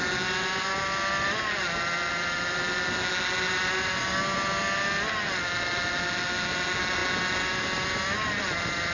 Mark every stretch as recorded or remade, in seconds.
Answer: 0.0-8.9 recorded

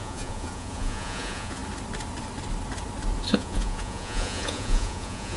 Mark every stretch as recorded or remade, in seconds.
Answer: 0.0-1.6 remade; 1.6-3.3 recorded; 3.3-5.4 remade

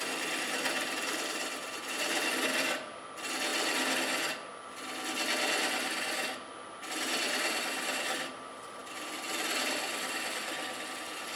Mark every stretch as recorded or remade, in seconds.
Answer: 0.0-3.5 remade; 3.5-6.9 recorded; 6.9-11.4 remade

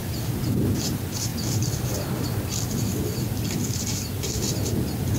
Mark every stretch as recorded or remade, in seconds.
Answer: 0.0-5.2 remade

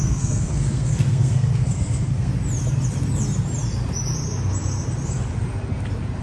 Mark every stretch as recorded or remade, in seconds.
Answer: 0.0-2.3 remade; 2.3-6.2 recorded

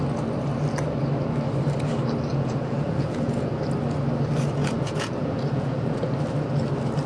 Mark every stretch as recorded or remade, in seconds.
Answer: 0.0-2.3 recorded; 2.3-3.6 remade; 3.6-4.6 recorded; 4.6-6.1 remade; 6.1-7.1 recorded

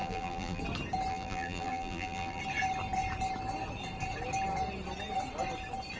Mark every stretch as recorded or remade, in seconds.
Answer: 0.0-0.6 remade; 0.6-1.1 recorded; 1.1-2.4 remade; 2.4-6.0 recorded

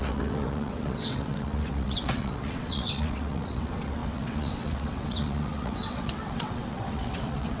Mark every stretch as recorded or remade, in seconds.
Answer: 0.0-7.6 remade